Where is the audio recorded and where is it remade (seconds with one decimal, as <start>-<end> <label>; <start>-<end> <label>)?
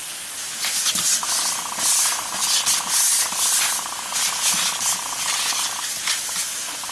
0.0-6.9 recorded